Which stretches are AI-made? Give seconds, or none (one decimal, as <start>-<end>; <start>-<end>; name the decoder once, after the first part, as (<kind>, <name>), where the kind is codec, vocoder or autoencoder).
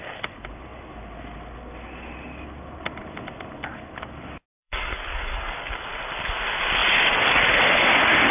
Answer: 4.6-5.7 (codec, DAC)